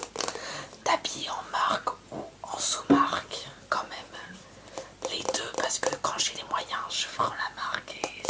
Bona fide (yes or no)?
yes